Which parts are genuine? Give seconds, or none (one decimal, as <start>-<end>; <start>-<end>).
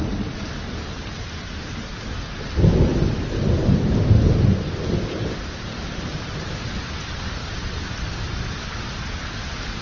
0.0-7.4; 8.6-9.8